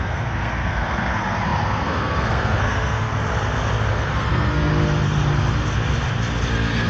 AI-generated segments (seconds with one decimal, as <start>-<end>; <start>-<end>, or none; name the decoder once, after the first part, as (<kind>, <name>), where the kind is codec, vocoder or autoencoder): 0.0-3.1 (codec, SNAC); 3.9-4.7; 6.5-6.9